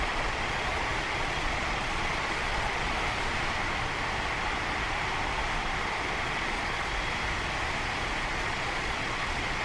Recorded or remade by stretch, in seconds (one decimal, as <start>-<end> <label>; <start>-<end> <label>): 0.0-3.3 remade; 3.3-6.2 recorded; 6.2-6.9 remade; 6.9-8.3 recorded; 8.3-9.6 remade